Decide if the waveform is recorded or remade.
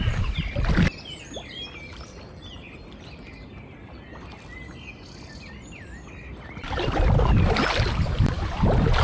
recorded